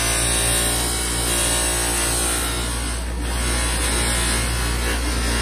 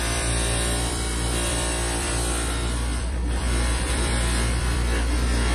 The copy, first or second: second